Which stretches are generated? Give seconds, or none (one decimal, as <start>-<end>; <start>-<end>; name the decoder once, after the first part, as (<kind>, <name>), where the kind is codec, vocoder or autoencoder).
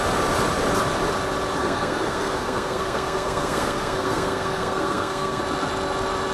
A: 1.6-5.4 (codec, SNAC)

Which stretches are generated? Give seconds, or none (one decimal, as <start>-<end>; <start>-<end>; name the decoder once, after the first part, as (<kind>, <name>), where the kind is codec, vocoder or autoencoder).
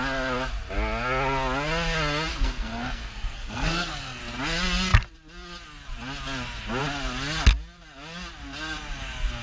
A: 2.3-4.2 (codec, SNAC)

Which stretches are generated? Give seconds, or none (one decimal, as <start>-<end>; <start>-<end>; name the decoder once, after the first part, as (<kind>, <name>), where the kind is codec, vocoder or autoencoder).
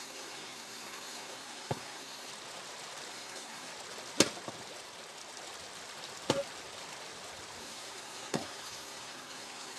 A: 0.0-2.3 (codec, SNAC); 3.1-3.7; 7.6-9.8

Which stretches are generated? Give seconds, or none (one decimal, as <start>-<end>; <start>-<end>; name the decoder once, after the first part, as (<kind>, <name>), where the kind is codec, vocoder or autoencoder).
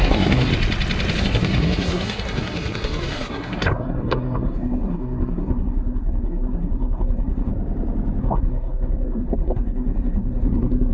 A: 0.0-0.5 (codec, SNAC); 1.2-7.5; 8.2-10.9